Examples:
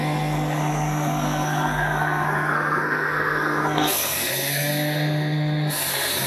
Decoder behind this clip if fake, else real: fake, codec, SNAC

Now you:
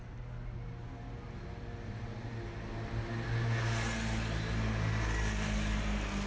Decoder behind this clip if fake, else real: real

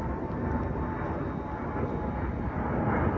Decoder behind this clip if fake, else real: real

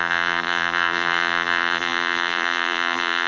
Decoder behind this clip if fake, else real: fake, vocoder, BigVGAN v2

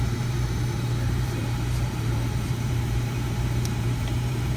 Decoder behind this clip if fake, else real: fake, vocoder, BigVGAN v2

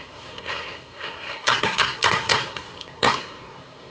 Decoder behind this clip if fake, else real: fake, codec, SNAC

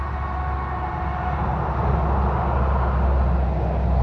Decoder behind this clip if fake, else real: real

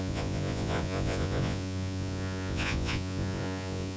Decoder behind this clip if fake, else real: fake, vocoder, Vocos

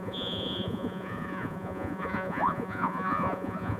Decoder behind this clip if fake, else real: fake, vocoder, Vocos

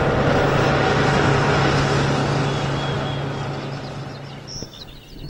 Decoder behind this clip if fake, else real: real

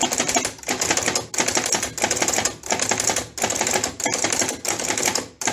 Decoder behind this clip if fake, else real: real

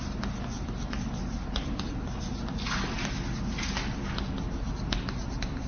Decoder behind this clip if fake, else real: real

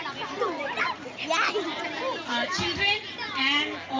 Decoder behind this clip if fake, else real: real